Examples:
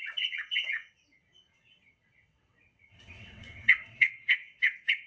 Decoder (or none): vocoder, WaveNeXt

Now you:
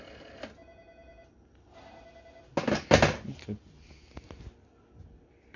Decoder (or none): none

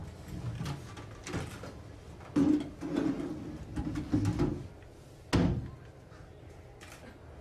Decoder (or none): none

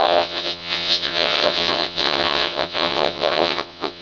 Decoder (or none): vocoder, WaveNeXt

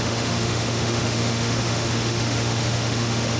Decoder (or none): autoencoder, DAC-VAE